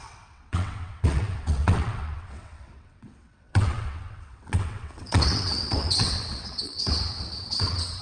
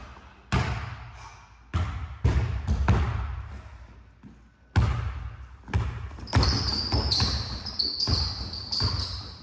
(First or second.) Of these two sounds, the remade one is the first